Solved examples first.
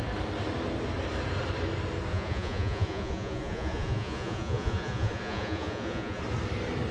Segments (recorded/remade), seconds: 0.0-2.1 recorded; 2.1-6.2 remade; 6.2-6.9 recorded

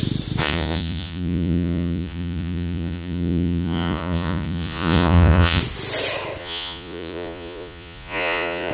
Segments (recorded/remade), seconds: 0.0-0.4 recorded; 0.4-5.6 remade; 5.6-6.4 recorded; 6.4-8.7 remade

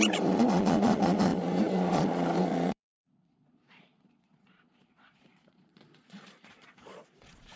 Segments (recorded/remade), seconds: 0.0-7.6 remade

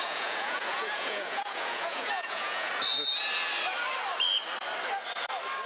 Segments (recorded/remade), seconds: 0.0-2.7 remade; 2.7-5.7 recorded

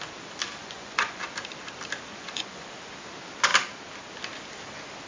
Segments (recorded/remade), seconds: 0.0-0.6 recorded; 0.6-1.2 remade; 1.2-2.1 recorded; 2.1-2.7 remade; 2.7-5.1 recorded